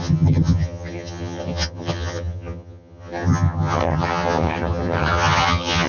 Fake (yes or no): yes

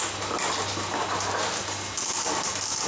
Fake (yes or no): no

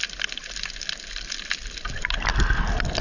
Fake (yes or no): no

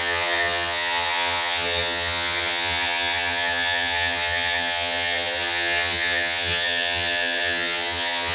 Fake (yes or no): yes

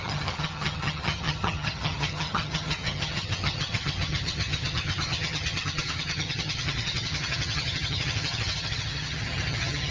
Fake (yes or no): yes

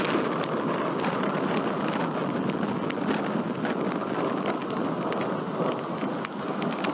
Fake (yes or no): no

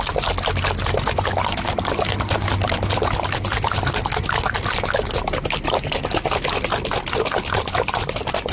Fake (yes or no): no